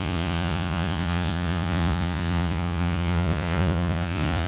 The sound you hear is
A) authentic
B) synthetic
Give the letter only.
B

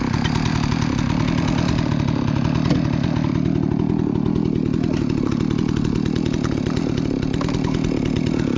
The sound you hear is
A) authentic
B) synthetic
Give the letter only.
A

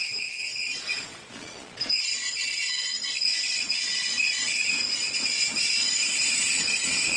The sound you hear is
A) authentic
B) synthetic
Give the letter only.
B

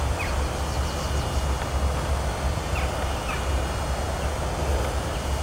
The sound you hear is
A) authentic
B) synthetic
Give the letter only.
A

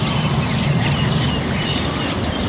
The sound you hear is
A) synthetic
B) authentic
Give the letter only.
B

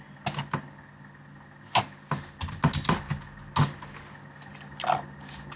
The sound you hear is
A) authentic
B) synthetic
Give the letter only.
A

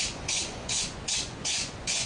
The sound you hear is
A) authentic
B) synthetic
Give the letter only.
B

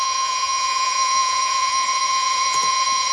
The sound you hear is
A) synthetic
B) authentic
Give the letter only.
A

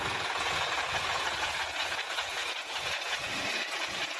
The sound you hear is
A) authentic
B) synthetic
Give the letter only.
B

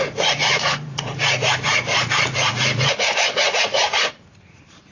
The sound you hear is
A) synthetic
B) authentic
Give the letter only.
A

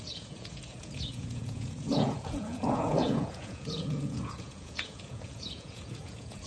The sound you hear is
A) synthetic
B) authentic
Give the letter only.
A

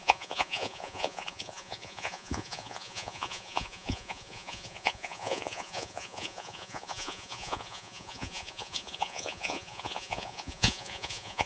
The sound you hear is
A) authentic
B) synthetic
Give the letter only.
B